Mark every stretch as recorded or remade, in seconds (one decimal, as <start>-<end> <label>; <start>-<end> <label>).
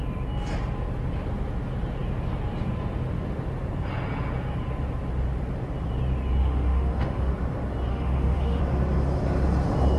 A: 0.0-6.4 recorded; 6.4-7.3 remade; 7.3-7.9 recorded; 7.9-8.6 remade; 8.6-10.0 recorded